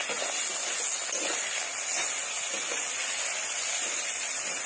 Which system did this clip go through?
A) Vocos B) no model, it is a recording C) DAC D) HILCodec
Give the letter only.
B